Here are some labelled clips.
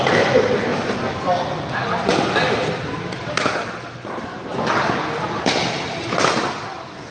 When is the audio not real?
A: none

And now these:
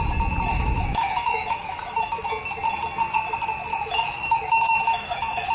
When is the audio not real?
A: 0.5-2.3 (autoencoder, DAC-VAE); 3.7-5.5

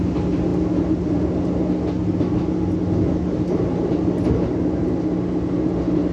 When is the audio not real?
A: none

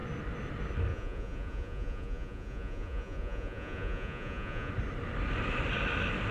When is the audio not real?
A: 0.9-4.7 (vocoder, Vocos)

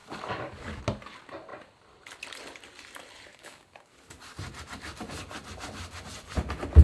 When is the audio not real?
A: 0.0-0.8 (codec, DAC); 3.3-4.2

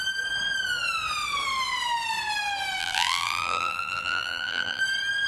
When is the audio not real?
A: 2.8-4.8 (vocoder, BigVGAN v2)

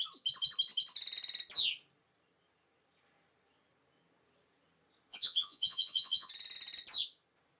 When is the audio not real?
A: 5.1-6.3 (vocoder, Vocos)